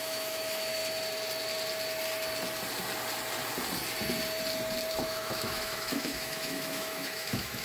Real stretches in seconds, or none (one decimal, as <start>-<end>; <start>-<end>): 0.8-4.9